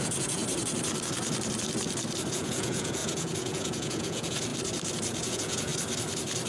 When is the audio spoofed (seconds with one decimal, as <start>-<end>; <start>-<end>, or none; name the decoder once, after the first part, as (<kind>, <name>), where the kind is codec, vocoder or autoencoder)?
0.0-0.4 (vocoder, Vocos); 2.3-4.5; 5.3-5.7